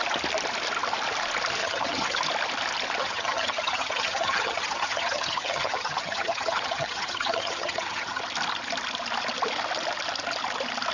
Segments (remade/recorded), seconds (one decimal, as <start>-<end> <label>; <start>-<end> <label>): 0.0-1.6 recorded; 1.6-2.2 remade; 2.2-3.0 recorded; 3.0-8.2 remade; 8.2-10.9 recorded